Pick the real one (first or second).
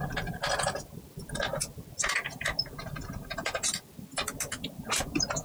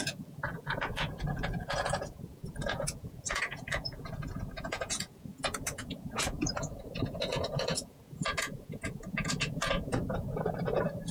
first